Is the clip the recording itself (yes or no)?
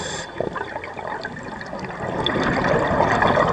yes